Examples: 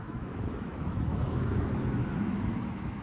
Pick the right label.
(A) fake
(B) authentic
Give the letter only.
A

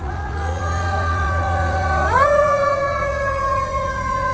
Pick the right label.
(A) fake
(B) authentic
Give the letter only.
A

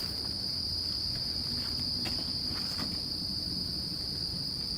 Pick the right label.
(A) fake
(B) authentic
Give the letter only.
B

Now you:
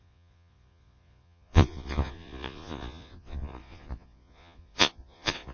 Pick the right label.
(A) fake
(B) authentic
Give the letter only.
A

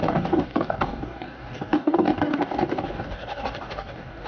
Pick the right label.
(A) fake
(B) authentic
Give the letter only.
A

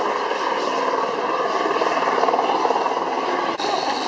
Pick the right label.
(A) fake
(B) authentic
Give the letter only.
B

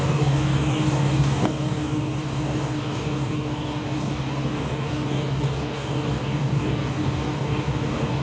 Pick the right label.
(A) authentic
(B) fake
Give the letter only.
B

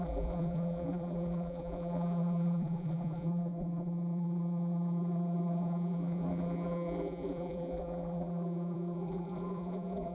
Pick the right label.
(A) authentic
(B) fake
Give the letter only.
B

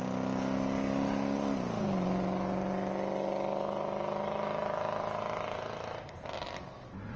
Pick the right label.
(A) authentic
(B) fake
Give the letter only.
A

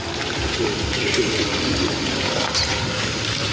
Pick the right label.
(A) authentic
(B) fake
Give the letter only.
A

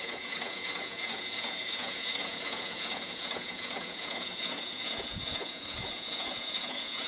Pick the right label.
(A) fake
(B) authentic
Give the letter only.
A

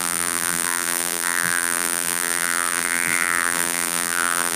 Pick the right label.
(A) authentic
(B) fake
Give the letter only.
B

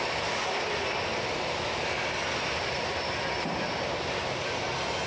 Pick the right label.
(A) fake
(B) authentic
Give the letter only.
B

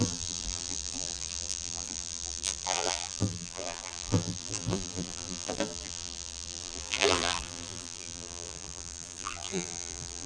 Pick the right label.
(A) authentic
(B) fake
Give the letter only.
B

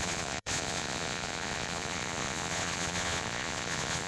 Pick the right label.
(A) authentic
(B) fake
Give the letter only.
B